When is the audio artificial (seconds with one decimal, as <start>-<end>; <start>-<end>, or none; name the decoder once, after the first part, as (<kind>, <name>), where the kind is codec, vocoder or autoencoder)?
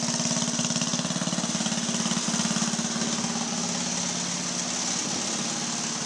none